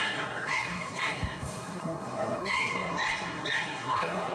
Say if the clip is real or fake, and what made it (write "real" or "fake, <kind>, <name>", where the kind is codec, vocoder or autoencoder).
fake, codec, SNAC